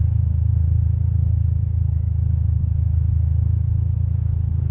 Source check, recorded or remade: remade